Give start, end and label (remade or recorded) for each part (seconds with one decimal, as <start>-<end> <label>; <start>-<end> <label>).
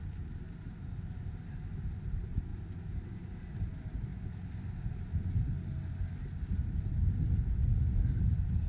0.0-4.1 remade; 4.1-8.2 recorded; 8.2-8.7 remade